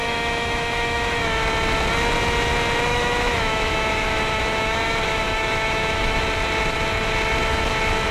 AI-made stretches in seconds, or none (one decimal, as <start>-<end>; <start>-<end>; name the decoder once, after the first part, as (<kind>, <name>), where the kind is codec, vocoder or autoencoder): 0.0-1.4 (autoencoder, DAC-VAE); 2.9-6.2